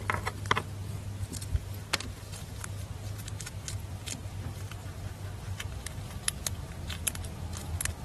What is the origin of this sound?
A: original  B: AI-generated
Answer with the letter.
A